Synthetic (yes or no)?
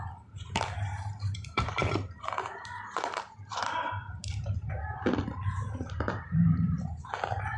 yes